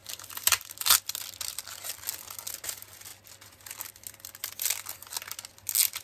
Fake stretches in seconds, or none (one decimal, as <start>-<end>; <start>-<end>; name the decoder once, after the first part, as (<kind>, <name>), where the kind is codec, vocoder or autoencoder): 0.0-1.0 (vocoder, BigVGAN v2)